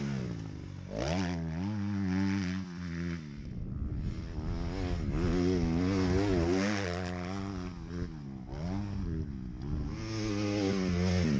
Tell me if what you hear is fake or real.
real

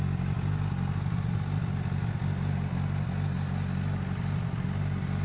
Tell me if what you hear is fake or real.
real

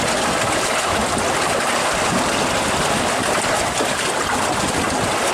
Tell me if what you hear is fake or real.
real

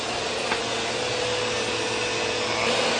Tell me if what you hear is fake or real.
real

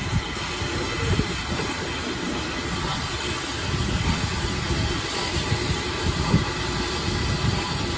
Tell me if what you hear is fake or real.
real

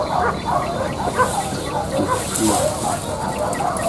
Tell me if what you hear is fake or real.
real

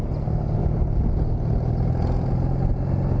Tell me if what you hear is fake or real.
real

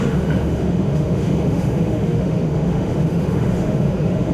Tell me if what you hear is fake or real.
fake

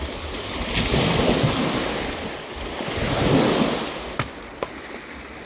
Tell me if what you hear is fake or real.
real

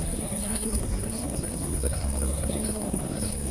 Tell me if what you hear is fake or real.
fake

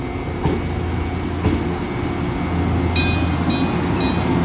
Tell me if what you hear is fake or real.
real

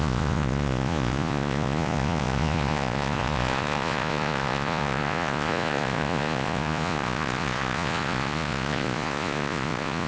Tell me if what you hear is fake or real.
fake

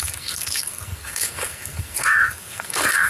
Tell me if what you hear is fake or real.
fake